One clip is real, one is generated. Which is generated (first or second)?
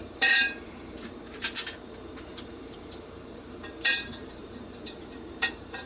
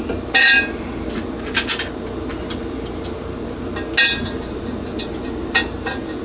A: first